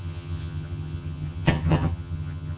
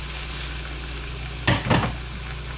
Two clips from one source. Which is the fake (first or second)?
first